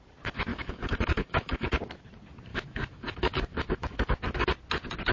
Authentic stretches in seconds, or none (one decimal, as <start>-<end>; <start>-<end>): 0.0-0.5; 1.8-2.5; 4.1-5.1